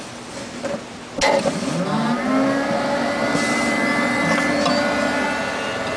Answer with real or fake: real